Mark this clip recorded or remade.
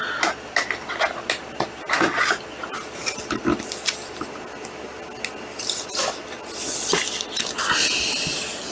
recorded